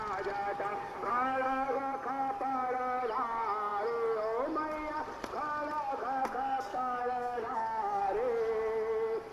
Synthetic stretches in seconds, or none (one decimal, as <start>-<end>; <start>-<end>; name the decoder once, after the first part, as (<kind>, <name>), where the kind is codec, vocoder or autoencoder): 0.7-1.8 (codec, DAC); 6.7-8.0